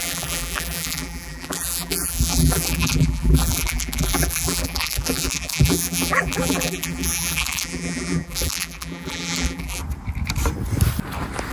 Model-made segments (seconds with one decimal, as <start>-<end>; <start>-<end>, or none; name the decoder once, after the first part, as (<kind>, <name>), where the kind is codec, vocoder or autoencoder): 0.0-9.8 (vocoder, BigVGAN v2)